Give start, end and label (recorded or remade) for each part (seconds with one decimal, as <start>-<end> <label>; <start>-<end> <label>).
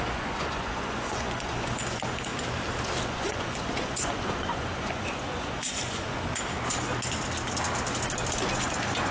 0.0-2.3 remade; 2.3-3.0 recorded; 3.0-6.3 remade; 6.3-8.5 recorded; 8.5-9.1 remade